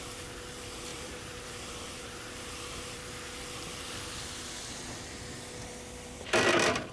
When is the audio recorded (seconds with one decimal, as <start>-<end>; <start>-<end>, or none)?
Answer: 0.0-0.9; 3.0-6.9